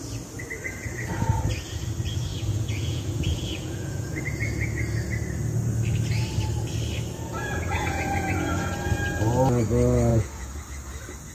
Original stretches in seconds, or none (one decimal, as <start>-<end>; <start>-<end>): 0.0-2.3; 4.2-7.3; 8.9-10.1; 10.6-11.3